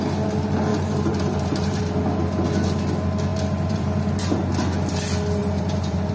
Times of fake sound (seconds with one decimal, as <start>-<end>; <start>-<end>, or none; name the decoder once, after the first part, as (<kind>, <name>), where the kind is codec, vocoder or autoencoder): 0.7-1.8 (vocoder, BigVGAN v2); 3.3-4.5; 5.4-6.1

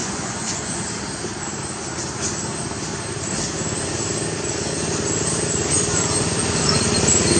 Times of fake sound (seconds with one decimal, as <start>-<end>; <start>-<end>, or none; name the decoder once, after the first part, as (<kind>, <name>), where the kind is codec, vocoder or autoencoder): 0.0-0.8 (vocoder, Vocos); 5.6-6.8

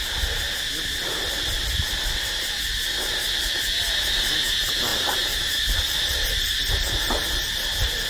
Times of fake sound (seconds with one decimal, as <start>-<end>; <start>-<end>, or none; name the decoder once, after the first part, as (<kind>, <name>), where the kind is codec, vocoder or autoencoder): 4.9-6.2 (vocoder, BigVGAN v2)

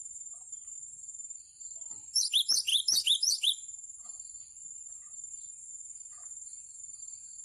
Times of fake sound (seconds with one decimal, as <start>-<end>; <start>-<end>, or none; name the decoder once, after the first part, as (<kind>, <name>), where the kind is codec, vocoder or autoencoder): 0.0-1.1 (vocoder, BigVGAN v2); 1.9-7.4

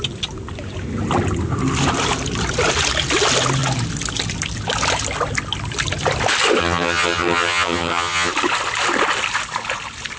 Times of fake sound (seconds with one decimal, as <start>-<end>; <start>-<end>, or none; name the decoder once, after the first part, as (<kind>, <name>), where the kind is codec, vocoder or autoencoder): 6.6-8.3 (vocoder, HiFi-GAN)

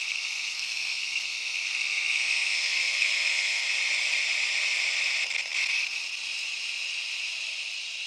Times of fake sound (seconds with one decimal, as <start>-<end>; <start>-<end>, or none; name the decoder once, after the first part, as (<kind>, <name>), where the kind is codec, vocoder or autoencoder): 0.0-3.7 (codec, SNAC)

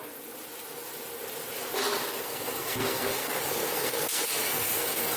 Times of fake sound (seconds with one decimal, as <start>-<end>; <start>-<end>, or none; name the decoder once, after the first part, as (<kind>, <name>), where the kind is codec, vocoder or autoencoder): 2.1-5.2 (codec, SNAC)